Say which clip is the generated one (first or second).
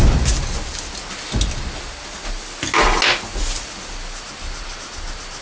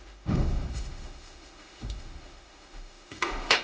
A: second